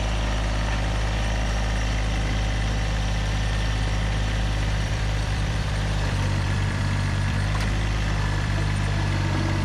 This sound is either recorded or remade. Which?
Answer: remade